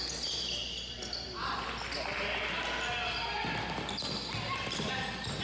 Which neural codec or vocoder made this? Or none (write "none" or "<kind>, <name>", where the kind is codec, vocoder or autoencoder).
none